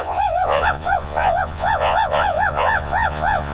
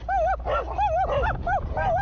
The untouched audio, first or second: second